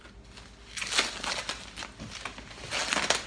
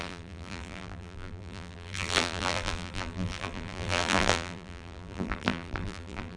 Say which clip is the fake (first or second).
second